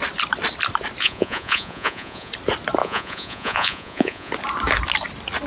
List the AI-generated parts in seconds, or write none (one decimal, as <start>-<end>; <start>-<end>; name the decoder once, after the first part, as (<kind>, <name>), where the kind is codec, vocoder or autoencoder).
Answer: 1.0-2.3 (vocoder, Vocos); 2.8-4.3